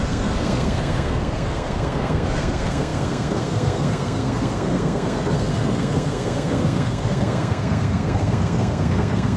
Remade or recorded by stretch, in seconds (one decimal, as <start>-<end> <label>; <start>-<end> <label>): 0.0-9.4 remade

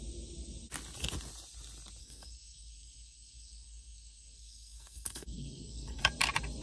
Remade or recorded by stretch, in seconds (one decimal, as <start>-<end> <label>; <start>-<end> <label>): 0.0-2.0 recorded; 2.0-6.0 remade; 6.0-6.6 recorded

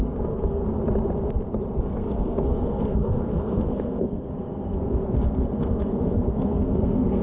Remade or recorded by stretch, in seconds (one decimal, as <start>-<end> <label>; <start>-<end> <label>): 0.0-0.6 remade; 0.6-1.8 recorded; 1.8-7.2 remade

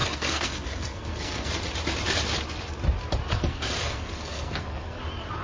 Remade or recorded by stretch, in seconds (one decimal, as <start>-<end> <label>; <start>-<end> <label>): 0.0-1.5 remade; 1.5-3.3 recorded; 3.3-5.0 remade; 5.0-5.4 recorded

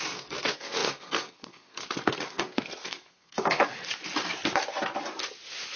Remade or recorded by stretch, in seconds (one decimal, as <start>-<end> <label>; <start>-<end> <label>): 0.0-3.7 remade; 3.7-5.8 recorded